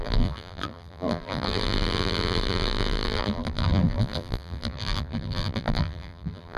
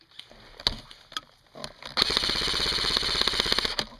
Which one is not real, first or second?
first